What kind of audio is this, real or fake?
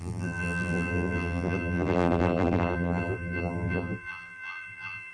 fake